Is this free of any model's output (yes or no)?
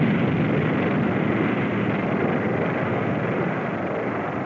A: yes